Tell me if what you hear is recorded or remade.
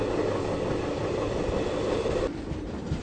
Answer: recorded